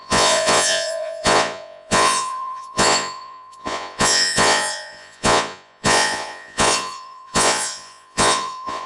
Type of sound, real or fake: fake